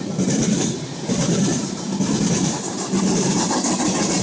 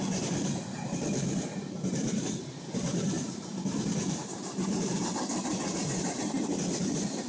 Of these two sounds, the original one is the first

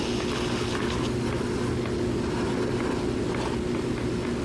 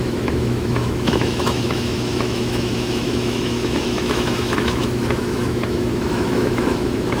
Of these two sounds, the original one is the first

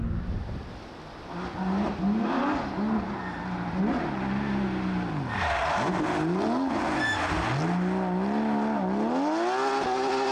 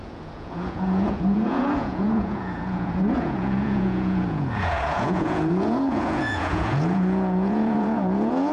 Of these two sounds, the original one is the first